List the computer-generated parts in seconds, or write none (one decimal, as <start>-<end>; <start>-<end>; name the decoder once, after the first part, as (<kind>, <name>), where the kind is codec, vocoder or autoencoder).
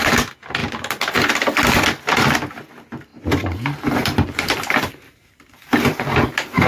0.6-1.3 (vocoder, BigVGAN v2); 3.1-6.0